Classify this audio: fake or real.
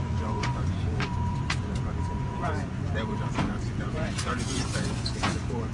fake